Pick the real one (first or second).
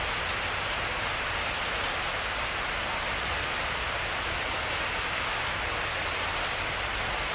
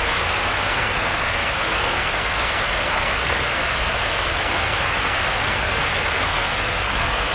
first